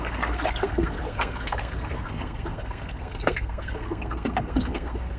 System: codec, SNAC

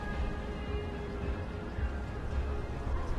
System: none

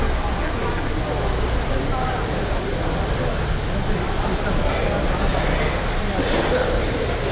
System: none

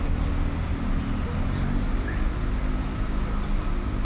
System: none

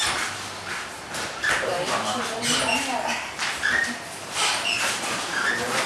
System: vocoder, BigVGAN v2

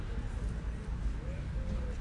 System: none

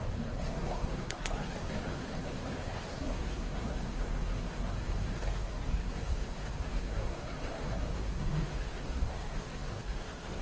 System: codec, SNAC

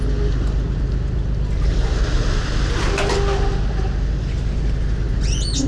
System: none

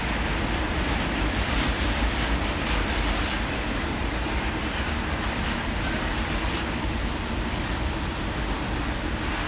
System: none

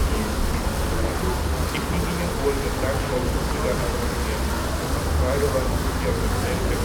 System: none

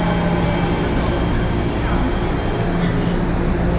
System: none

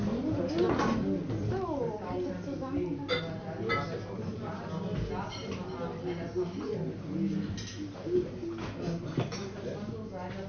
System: none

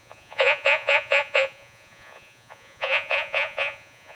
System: vocoder, Vocos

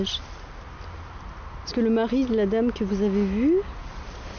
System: none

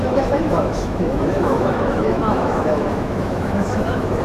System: autoencoder, DAC-VAE